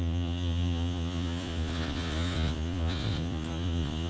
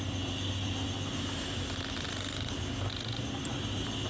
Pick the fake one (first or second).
first